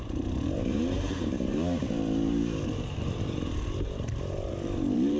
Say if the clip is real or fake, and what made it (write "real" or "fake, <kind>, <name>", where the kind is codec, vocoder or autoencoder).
fake, vocoder, BigVGAN v2